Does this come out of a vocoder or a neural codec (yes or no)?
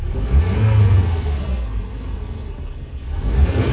yes